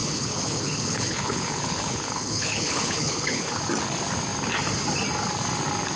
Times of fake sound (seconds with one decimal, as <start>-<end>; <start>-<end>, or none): 0.0-3.6